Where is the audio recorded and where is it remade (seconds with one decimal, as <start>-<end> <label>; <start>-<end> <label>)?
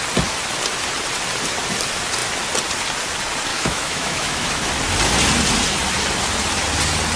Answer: 0.0-3.5 recorded; 3.5-4.7 remade; 4.7-7.2 recorded